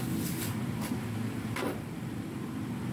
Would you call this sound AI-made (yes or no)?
no